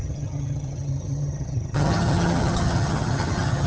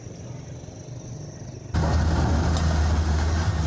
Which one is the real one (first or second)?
second